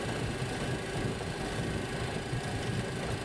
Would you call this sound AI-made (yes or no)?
yes